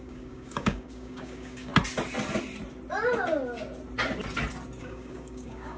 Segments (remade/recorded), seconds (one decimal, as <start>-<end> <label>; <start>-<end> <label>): 0.0-1.7 remade; 1.7-4.8 recorded; 4.8-5.8 remade